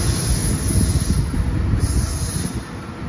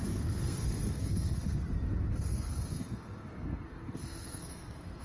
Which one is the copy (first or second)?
second